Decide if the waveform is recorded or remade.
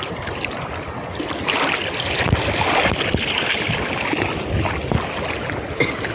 recorded